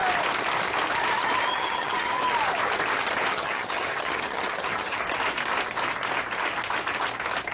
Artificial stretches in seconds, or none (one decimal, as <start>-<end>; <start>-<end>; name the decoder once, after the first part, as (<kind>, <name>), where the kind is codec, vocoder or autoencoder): 1.5-2.2 (vocoder, HiFi-GAN); 3.3-5.0